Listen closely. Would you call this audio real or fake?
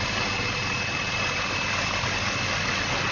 real